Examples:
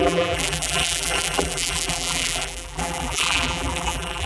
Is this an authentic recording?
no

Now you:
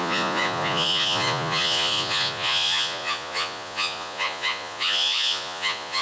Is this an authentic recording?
no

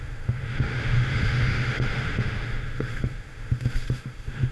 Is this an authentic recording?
no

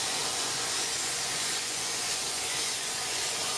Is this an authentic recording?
no